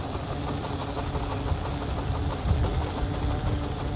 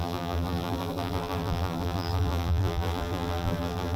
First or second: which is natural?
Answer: first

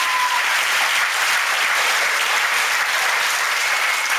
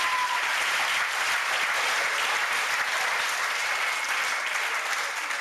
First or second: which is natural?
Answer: second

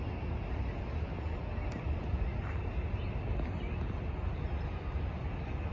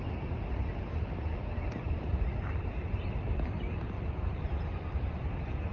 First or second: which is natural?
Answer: first